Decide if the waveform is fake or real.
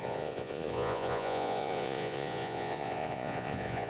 fake